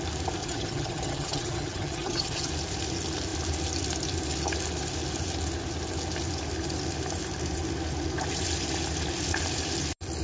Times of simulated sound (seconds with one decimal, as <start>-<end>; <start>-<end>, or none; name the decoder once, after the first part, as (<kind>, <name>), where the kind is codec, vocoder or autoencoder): 0.4-2.5 (vocoder, HiFi-GAN)